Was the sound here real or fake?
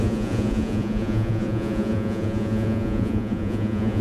fake